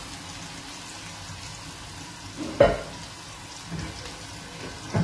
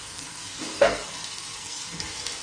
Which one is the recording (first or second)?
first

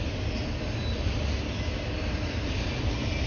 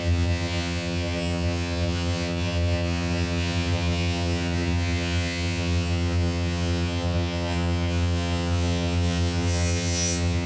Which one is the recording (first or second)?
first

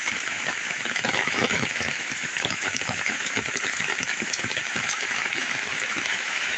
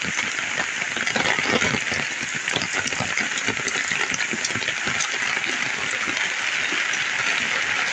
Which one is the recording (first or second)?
second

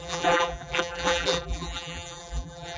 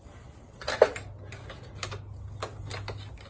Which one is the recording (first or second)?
second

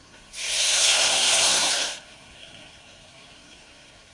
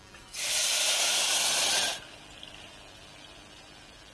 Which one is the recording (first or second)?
second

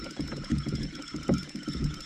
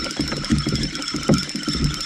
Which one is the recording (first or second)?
second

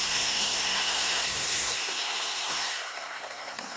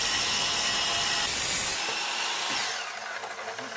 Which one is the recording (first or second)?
second